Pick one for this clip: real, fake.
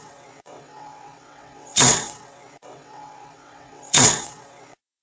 fake